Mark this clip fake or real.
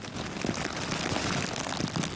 real